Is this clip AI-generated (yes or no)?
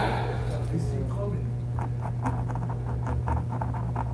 no